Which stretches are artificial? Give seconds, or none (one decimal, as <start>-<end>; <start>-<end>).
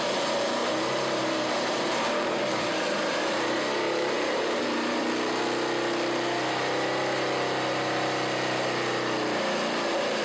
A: 0.6-5.1